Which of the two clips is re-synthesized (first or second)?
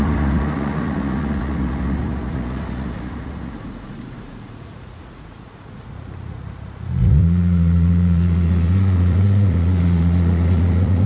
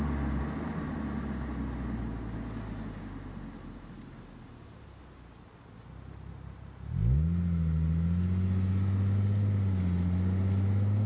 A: first